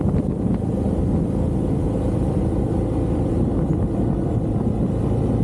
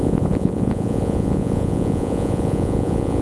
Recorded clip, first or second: first